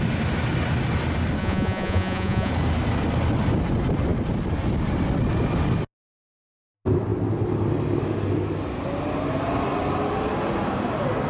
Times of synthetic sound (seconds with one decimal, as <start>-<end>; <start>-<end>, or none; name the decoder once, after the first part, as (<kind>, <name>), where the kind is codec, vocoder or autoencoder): 1.4-2.5 (vocoder, Vocos)